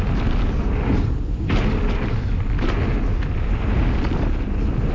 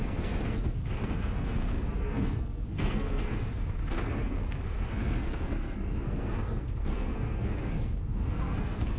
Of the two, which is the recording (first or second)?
first